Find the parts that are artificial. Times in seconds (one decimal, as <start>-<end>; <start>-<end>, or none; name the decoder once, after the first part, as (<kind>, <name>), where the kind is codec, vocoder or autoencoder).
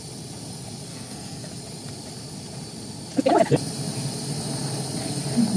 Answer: 0.9-1.5 (codec, SNAC)